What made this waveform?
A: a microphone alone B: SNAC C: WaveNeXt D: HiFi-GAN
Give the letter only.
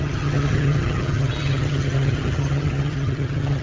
D